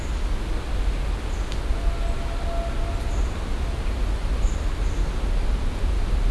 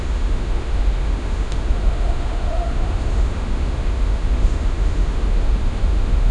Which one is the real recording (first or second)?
first